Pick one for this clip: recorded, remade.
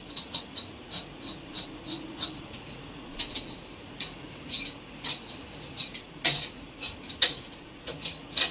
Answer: remade